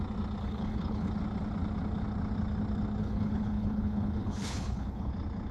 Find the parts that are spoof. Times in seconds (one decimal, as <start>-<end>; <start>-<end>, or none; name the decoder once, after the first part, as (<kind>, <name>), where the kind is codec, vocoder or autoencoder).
0.4-1.1 (codec, HILCodec); 3.0-5.1